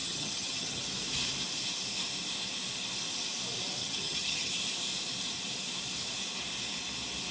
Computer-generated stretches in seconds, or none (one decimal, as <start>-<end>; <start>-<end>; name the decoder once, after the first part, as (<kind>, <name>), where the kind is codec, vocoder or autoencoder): 0.0-0.8 (vocoder, HiFi-GAN); 3.8-4.5